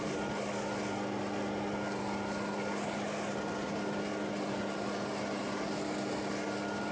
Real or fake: real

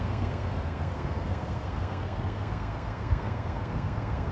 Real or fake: fake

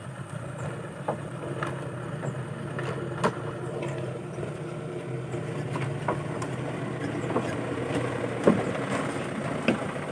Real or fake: real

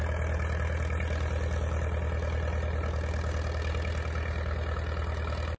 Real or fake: real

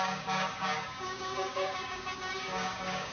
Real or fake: fake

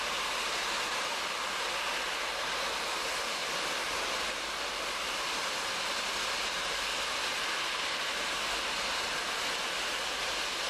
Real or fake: real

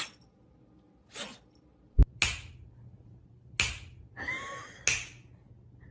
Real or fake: real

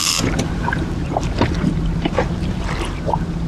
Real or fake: fake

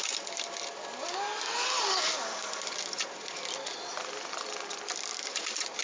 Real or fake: real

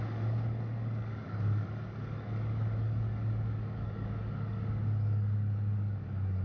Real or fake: fake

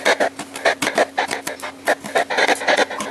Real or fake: real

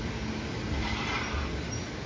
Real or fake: real